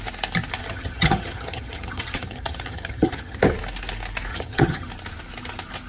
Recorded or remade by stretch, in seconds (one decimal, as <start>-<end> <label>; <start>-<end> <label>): 0.0-0.6 recorded; 0.6-3.4 remade; 3.4-4.3 recorded; 4.3-4.9 remade; 4.9-5.9 recorded